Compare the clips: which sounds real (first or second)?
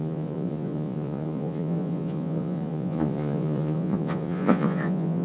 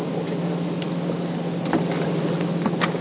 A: second